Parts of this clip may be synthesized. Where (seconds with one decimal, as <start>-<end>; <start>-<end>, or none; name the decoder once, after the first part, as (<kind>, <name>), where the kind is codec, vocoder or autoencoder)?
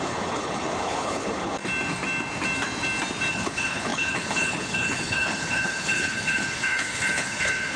0.0-1.6 (codec, HILCodec); 3.3-7.8